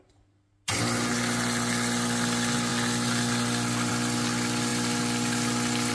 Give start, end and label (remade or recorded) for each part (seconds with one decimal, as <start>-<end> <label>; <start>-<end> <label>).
0.0-5.9 recorded